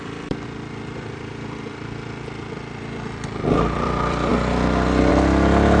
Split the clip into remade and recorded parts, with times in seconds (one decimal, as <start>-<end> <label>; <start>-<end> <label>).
0.0-5.8 remade